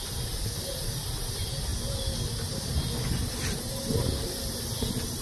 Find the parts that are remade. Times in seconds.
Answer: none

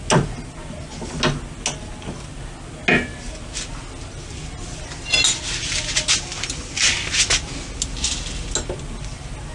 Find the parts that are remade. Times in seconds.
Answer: none

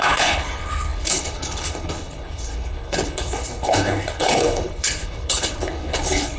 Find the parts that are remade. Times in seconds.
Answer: 0.0-6.4 (codec, HILCodec)

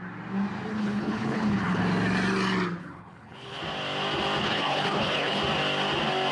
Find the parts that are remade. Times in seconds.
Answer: 0.7-1.8 (codec, HILCodec); 2.8-3.6; 4.4-5.4

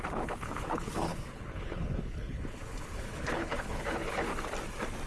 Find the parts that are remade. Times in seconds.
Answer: 0.0-4.3 (codec, HILCodec)